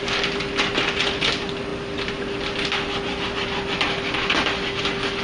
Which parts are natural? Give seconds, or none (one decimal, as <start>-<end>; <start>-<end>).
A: 0.0-5.2